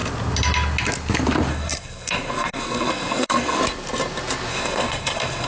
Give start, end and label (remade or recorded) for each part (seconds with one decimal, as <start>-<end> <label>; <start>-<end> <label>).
0.0-1.5 recorded; 1.5-3.6 remade; 3.6-4.5 recorded; 4.5-5.5 remade